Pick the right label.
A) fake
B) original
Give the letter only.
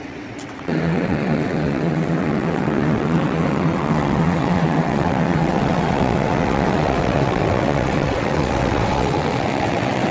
A